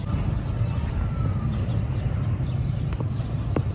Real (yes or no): yes